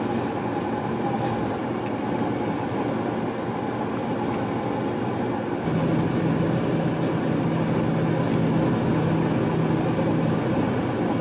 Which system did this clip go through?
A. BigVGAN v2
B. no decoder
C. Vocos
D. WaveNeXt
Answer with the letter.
B